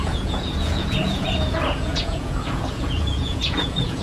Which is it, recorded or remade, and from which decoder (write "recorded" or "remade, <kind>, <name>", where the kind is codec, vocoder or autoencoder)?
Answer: remade, vocoder, Vocos